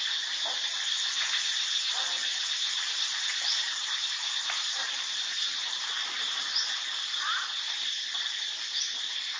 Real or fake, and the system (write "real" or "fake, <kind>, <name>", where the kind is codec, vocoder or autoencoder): fake, vocoder, BigVGAN v2